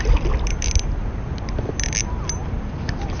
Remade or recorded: recorded